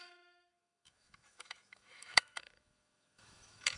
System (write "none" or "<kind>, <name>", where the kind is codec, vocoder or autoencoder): autoencoder, DAC-VAE